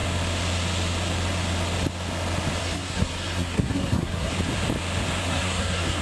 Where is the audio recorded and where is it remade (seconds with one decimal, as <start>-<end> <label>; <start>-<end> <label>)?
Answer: 0.0-2.6 recorded; 2.6-4.3 remade; 4.3-5.2 recorded; 5.2-6.0 remade